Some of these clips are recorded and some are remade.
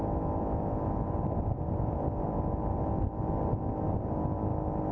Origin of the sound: recorded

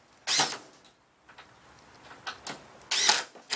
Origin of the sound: recorded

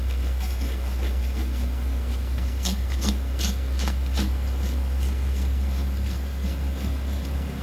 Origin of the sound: remade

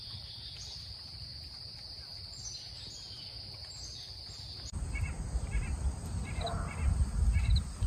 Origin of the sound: recorded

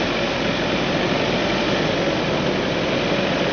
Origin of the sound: recorded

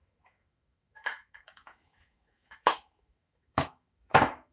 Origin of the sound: remade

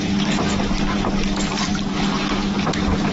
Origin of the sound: recorded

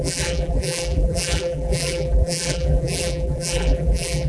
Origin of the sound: remade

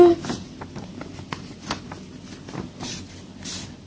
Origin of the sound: recorded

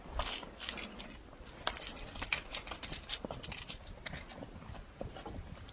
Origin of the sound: recorded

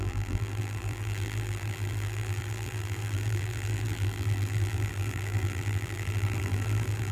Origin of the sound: remade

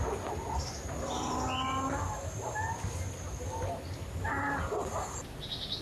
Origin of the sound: recorded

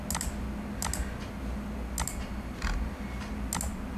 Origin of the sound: recorded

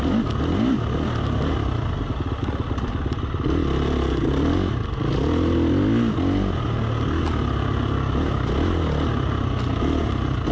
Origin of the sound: recorded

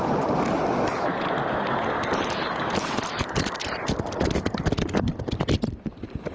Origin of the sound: remade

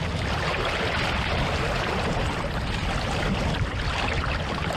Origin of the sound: recorded